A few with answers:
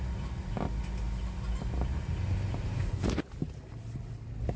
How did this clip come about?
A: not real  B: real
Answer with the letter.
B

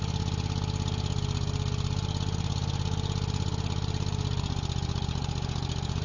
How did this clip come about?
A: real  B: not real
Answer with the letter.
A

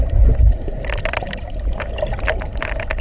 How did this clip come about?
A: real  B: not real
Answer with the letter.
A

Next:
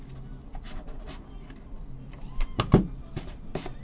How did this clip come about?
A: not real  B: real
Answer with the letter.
B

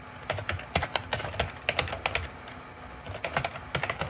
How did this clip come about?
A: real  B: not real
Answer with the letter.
A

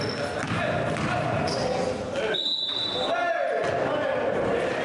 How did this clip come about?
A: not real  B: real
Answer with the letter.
B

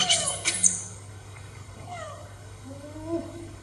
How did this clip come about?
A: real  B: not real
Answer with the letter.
B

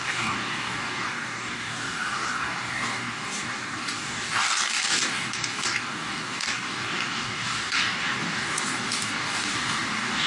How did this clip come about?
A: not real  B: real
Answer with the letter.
A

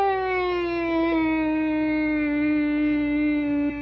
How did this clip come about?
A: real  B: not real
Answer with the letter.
A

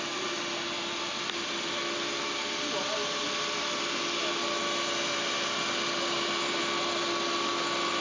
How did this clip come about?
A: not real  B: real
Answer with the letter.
B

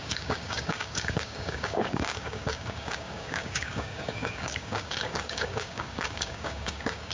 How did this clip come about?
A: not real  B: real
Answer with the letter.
A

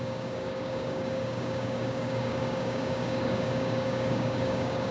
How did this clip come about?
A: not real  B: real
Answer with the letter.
A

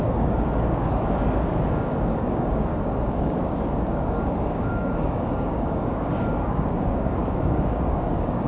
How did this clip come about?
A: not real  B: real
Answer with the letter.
A